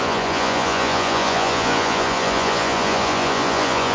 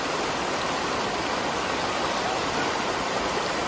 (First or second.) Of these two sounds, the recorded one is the second